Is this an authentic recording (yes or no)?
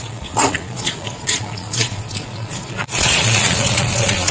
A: no